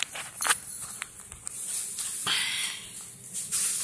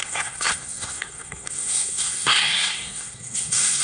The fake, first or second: second